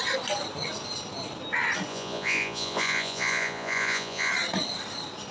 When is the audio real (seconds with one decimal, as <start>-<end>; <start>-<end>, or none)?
0.0-1.9; 4.3-5.3